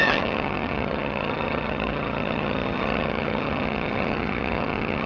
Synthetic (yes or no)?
yes